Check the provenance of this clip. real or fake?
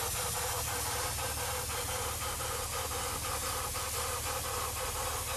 real